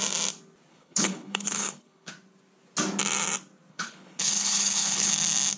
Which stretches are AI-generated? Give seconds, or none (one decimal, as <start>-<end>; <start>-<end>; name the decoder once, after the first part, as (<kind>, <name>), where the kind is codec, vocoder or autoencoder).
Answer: 0.7-2.1 (codec, HILCodec); 3.7-5.1